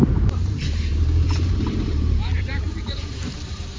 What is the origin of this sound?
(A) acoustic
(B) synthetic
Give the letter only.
B